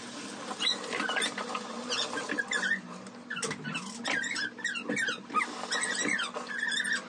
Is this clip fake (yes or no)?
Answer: no